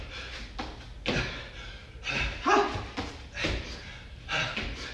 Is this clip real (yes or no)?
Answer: yes